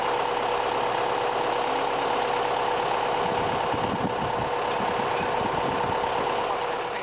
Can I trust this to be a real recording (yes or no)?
yes